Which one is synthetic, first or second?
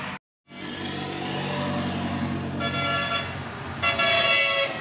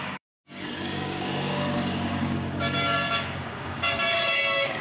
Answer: second